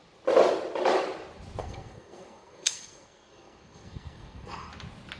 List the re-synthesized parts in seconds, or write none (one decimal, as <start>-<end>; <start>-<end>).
1.6-4.7